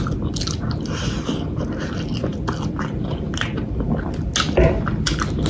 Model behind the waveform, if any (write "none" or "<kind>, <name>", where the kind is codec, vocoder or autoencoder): none